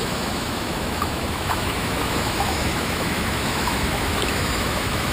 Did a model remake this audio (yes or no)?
yes